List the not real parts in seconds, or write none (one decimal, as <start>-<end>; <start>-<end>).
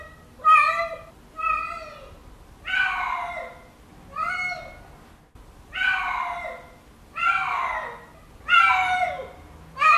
none